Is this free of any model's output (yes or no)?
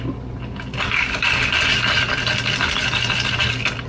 yes